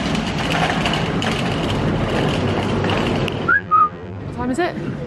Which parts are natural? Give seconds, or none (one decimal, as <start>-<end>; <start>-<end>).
0.0-3.5; 4.2-5.1